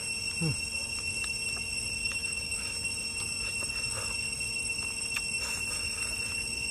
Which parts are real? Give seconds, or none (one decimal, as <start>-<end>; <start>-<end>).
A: 0.0-2.0; 2.6-6.7